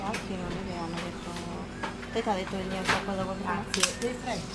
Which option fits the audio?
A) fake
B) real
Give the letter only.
B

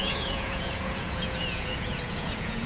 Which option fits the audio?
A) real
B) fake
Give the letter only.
B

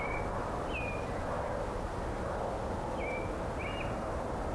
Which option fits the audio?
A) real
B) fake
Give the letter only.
A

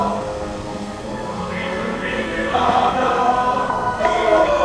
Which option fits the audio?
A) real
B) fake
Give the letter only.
B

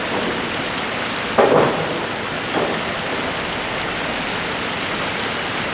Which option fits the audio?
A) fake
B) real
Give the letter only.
B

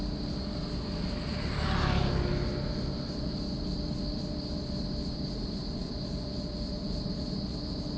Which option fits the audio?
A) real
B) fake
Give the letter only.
A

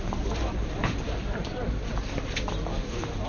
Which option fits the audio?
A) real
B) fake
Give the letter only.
A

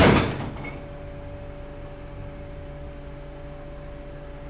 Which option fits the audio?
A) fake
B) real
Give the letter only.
B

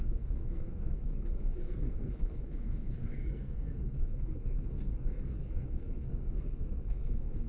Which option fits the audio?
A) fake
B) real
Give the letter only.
A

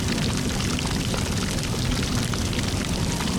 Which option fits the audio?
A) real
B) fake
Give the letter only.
B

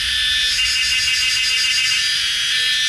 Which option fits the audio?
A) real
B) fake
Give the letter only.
A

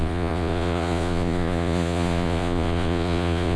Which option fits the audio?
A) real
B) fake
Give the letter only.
B